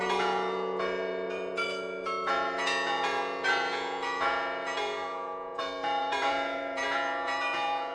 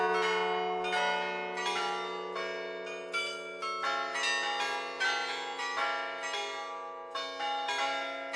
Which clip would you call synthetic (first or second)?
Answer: first